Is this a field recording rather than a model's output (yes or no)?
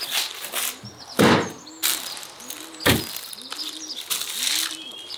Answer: yes